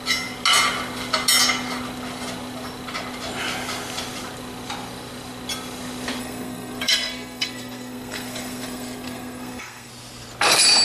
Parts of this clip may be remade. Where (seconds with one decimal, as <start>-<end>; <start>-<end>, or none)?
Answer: 6.2-9.9

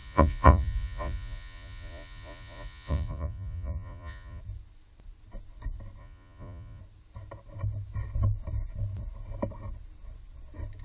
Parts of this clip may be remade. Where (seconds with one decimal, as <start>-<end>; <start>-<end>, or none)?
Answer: 0.0-4.4; 6.0-6.8

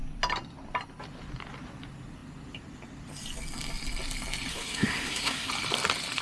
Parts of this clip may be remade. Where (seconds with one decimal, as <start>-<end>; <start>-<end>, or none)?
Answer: 4.5-5.5